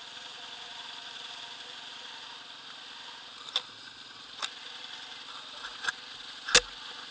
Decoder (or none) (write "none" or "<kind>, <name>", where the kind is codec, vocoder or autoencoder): none